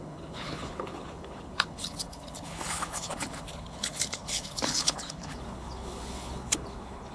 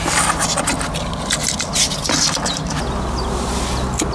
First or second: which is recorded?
second